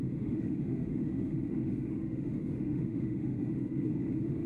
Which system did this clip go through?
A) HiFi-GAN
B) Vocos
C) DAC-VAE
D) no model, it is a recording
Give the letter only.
C